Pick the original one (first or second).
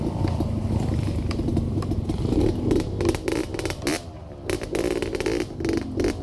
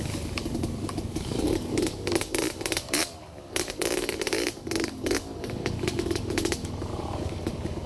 first